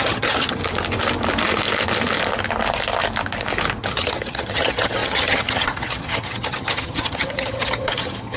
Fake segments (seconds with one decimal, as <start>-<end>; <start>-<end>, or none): 0.0-0.6; 3.8-8.4